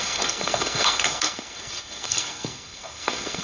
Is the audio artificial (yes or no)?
yes